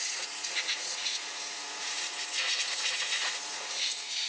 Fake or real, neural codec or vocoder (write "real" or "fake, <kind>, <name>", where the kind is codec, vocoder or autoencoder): fake, vocoder, Vocos